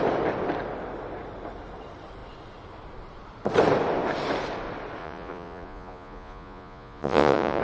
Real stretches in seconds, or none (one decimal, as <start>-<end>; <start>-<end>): 0.0-5.0